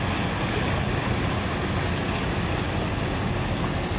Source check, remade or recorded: recorded